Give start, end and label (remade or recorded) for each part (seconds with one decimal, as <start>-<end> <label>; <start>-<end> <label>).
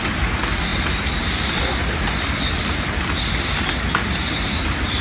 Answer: 0.0-5.0 recorded